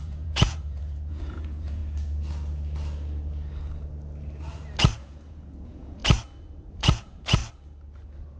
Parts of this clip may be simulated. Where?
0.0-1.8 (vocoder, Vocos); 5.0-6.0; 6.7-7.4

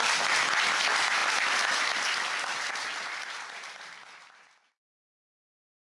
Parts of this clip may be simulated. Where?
none